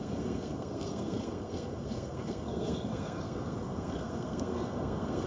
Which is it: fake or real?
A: fake